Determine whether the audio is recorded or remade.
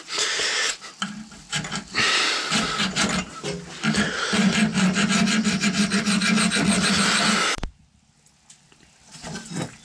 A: recorded